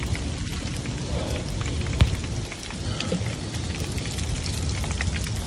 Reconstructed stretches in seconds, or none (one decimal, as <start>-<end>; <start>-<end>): none